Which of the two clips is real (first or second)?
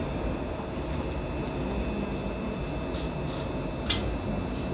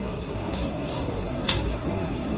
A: first